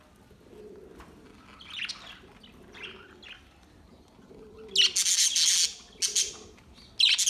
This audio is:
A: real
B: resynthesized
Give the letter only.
A